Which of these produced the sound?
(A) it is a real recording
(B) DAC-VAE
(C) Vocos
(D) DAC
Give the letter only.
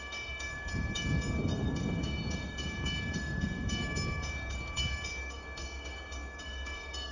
D